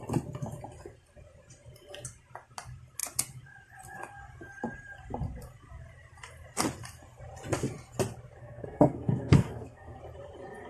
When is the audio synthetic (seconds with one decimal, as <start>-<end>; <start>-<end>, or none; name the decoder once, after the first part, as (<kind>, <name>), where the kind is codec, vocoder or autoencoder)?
8.4-10.0 (codec, SNAC)